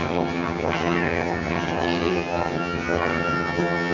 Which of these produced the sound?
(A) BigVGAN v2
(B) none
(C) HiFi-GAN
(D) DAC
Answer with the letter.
C